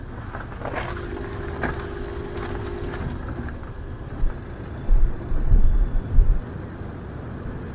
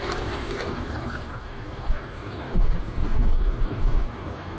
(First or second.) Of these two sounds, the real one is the first